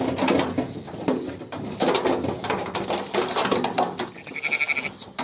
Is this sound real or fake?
real